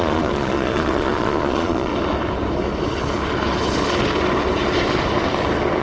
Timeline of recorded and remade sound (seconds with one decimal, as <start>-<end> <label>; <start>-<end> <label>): 0.0-1.9 remade; 1.9-5.8 recorded